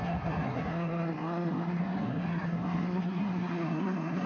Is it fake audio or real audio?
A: fake